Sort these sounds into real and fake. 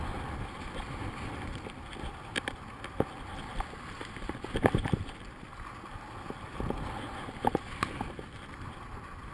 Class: real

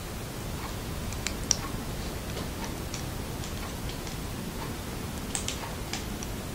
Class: real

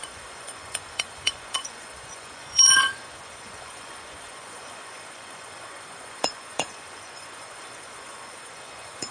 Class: fake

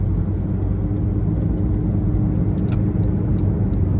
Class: real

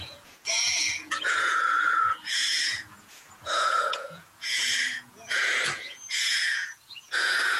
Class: fake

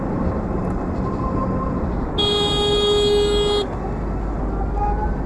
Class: real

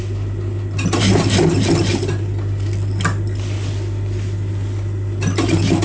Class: real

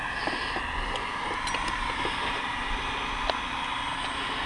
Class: real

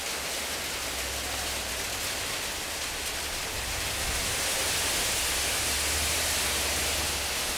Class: real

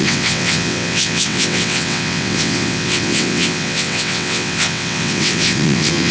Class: fake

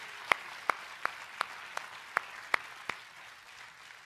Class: real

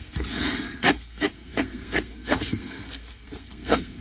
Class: fake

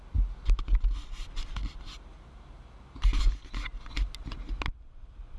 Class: real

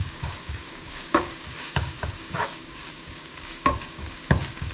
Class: fake